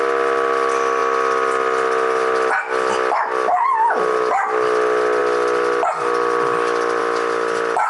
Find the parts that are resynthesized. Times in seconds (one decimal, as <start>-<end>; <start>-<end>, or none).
none